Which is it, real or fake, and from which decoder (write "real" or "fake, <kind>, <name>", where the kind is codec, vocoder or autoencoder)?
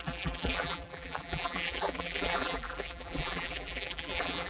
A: fake, vocoder, BigVGAN v2